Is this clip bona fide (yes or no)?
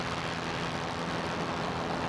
yes